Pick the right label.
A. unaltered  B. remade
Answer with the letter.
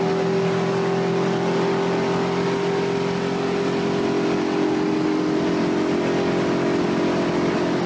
A